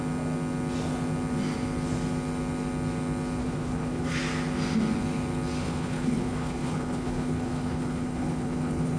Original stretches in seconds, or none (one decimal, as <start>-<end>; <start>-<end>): 0.0-3.4; 4.2-5.6